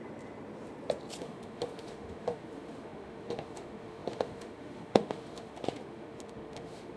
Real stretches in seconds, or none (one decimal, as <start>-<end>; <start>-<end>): 0.0-1.2